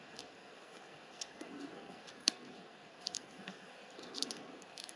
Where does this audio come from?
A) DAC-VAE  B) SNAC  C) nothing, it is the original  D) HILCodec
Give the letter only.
B